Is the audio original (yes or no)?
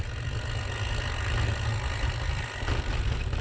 yes